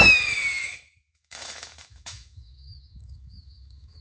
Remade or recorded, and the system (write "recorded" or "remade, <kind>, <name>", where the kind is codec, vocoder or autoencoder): remade, autoencoder, DAC-VAE